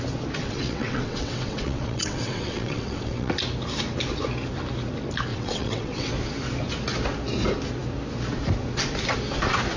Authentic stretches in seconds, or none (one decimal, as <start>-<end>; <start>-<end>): 0.0-0.4; 3.3-5.3; 6.1-9.8